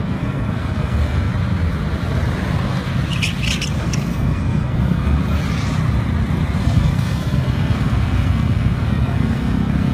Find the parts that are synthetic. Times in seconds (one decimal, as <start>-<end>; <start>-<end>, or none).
0.0-1.3; 3.8-5.2; 6.6-9.9